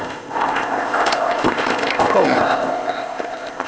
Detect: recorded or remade remade